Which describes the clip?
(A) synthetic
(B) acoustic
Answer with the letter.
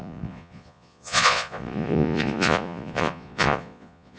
A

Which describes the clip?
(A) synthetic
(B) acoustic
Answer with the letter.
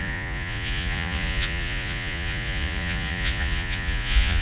A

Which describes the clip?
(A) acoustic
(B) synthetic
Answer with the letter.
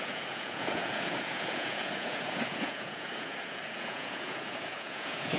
B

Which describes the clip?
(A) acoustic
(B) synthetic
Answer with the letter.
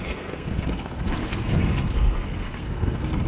B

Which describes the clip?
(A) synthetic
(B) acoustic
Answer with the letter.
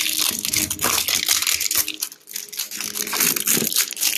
B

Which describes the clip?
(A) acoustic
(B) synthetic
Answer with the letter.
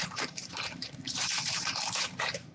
B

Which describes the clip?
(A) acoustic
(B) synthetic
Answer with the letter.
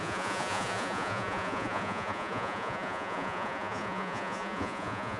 B